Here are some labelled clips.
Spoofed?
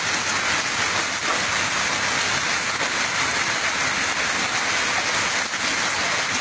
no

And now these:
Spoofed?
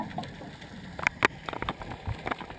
no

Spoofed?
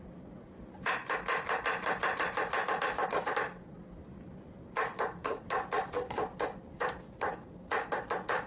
no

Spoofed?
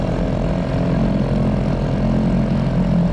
no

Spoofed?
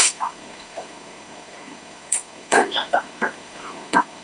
yes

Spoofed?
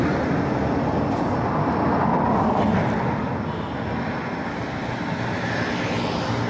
no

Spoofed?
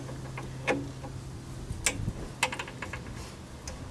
no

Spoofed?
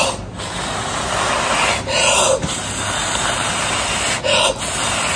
no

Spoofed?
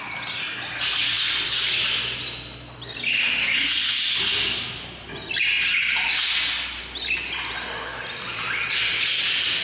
no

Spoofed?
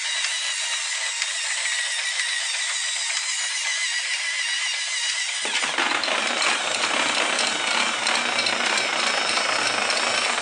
no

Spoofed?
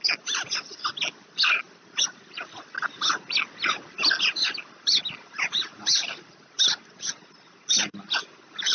no